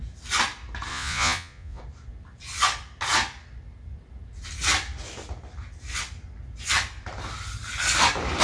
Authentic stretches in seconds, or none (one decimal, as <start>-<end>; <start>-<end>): 0.0-0.9; 1.8-8.4